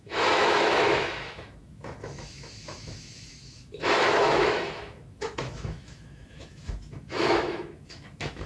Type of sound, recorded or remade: remade